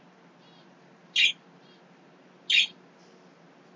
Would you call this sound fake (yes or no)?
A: no